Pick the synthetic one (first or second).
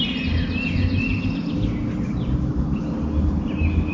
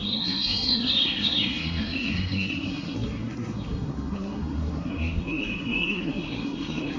second